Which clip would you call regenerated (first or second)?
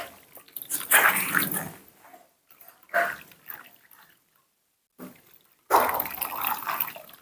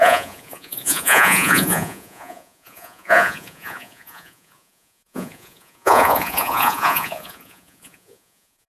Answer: second